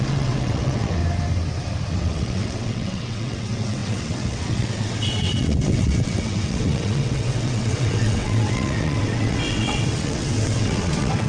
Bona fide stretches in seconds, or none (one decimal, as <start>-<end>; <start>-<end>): 1.0-1.9